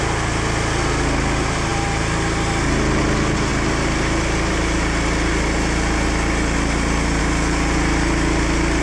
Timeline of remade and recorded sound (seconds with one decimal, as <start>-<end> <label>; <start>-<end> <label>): 0.0-8.8 recorded